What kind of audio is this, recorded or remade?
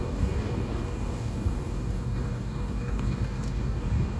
remade